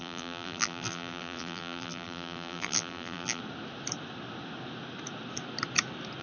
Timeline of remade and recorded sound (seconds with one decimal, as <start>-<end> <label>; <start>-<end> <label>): 0.0-3.4 remade; 3.4-6.2 recorded